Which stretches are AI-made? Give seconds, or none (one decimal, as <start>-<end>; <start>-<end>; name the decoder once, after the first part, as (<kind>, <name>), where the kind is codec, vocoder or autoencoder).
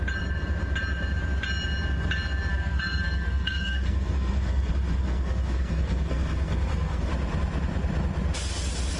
2.5-7.1 (codec, SNAC)